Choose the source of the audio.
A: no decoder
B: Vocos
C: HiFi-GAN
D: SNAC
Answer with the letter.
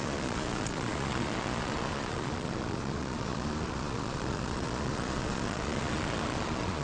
B